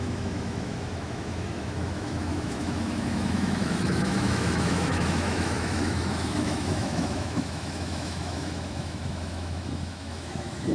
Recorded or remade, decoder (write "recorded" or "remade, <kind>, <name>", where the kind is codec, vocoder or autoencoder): remade, autoencoder, DAC-VAE